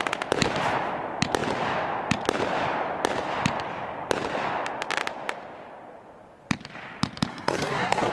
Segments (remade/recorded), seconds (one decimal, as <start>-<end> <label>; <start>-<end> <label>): 0.0-7.3 recorded; 7.3-8.1 remade